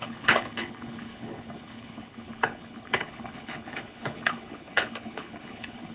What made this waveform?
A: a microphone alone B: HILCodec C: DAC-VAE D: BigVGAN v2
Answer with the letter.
B